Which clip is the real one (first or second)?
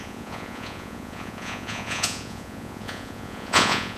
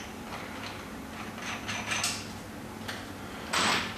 second